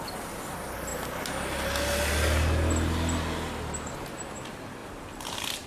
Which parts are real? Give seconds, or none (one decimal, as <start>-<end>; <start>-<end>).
0.0-4.8